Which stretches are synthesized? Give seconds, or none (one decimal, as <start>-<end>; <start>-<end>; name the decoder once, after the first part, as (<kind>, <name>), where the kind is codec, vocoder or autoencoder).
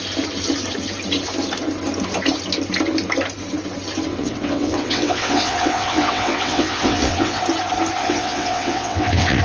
4.1-7.4 (vocoder, WaveNeXt); 8.0-9.4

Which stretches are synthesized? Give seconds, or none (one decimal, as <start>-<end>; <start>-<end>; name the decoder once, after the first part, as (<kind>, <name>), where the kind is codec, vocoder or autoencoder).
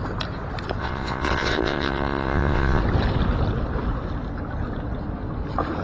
0.8-2.8 (vocoder, WaveNeXt)